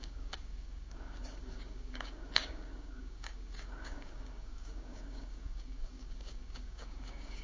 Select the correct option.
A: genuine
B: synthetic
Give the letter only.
B